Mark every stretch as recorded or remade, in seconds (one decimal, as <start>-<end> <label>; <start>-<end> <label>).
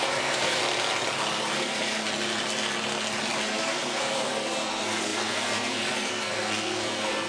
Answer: 0.0-0.6 remade; 0.6-1.5 recorded; 1.5-2.0 remade; 2.0-3.4 recorded; 3.4-7.3 remade